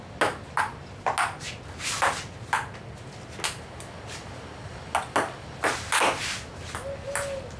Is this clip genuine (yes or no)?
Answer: yes